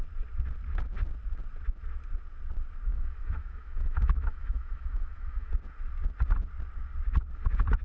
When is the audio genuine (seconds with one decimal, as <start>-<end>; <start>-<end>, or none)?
0.0-2.9; 5.5-7.8